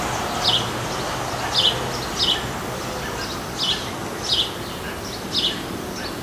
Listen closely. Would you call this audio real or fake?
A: real